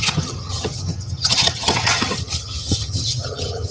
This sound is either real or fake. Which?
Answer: fake